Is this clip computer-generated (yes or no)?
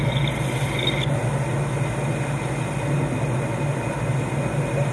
no